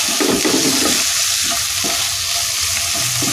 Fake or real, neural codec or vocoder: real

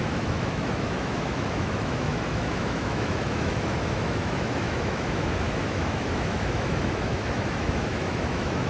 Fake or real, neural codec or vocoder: fake, autoencoder, DAC-VAE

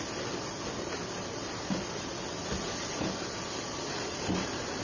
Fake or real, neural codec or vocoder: real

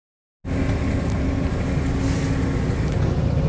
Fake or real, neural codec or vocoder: real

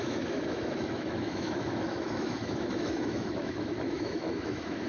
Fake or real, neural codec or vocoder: fake, autoencoder, DAC-VAE